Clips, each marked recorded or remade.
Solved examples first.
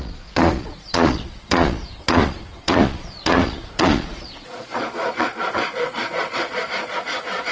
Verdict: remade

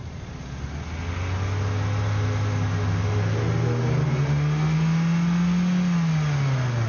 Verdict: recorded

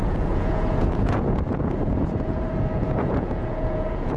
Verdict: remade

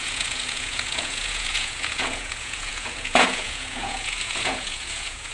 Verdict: remade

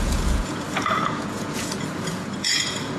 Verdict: remade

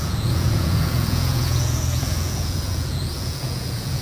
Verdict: remade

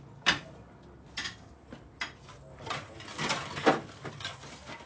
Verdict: recorded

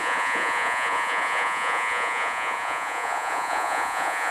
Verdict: remade